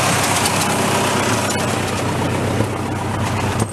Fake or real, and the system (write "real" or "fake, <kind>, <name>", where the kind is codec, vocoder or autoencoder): real